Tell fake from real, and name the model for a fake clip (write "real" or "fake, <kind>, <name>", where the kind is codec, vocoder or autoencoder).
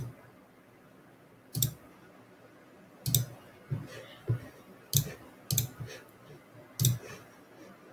real